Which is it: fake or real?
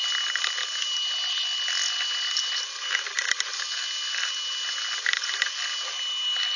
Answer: real